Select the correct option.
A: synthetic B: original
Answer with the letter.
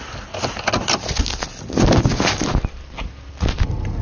B